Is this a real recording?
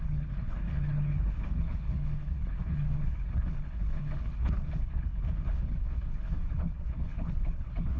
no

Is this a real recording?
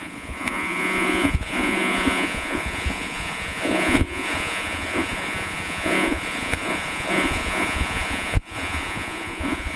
no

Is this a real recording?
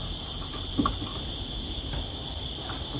yes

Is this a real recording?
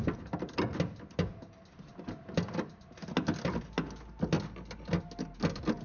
yes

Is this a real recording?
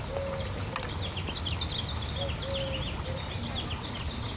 yes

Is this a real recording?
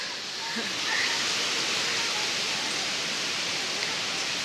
yes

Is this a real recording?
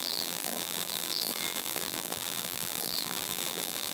no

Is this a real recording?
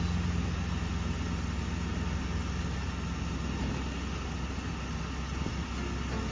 yes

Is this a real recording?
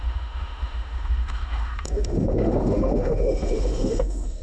no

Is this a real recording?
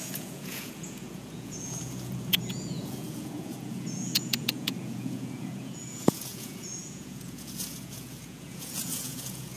no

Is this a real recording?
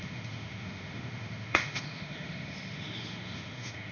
no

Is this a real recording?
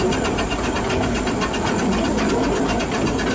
yes